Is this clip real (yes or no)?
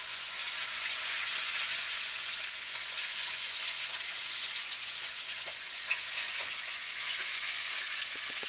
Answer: no